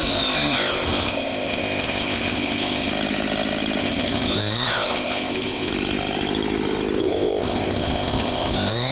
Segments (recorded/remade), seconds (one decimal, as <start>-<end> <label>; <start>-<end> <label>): 0.0-2.9 remade; 2.9-3.8 recorded; 3.8-5.7 remade; 5.7-7.0 recorded; 7.0-8.9 remade